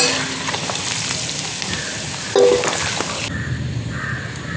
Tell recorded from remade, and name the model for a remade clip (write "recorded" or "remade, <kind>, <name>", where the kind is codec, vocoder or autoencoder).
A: recorded